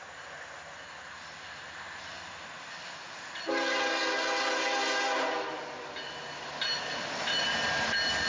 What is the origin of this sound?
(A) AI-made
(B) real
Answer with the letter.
B